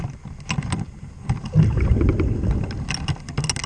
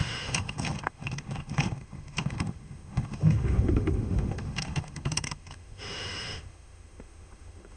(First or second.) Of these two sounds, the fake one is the second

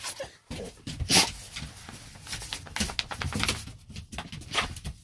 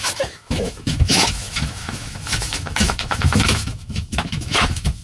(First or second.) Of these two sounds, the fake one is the second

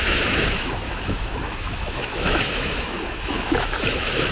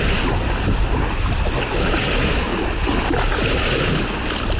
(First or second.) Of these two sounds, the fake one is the first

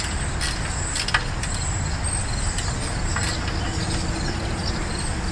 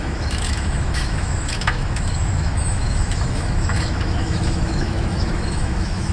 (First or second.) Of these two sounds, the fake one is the second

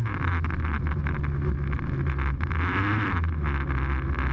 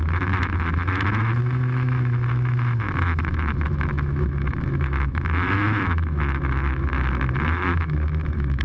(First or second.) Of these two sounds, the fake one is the second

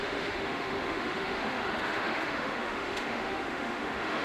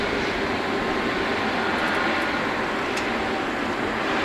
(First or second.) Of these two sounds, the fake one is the first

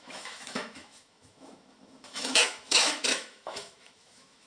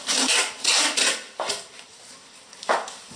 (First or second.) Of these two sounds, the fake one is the first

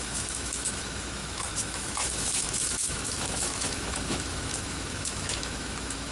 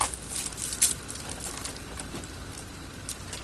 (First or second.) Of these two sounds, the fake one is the first